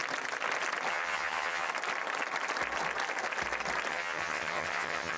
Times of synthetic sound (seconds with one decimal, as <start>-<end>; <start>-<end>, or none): 0.9-1.7; 3.9-5.2